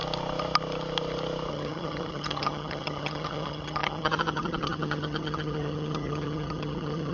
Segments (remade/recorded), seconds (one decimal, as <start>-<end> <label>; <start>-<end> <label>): 0.0-1.5 recorded; 1.5-7.1 remade